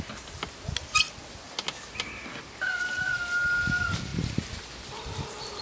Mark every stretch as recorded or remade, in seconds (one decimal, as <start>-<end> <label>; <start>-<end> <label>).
0.0-5.6 recorded

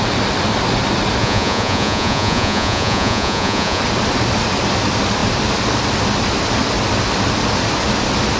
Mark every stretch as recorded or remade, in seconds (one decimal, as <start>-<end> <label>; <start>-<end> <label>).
0.0-1.2 recorded; 1.2-3.8 remade; 3.8-8.4 recorded

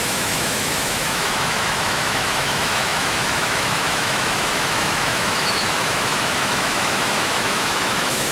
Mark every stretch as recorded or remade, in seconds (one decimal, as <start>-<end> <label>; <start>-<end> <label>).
0.0-8.3 remade

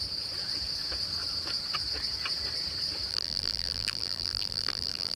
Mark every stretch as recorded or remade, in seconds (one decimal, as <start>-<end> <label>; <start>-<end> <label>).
0.0-3.1 recorded; 3.1-5.2 remade

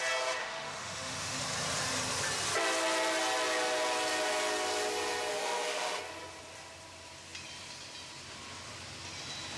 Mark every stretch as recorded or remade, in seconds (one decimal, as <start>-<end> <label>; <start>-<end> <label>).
0.0-0.4 recorded; 0.4-1.4 remade; 1.4-5.3 recorded; 5.3-6.0 remade; 6.0-9.6 recorded

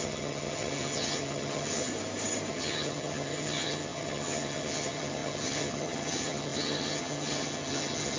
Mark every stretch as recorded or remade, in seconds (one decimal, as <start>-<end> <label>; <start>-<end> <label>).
0.0-1.9 remade; 1.9-2.5 recorded; 2.5-8.2 remade

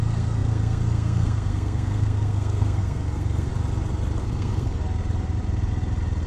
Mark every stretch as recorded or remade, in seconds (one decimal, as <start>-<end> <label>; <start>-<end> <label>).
0.0-3.5 remade; 3.5-4.2 recorded; 4.2-4.8 remade; 4.8-6.3 recorded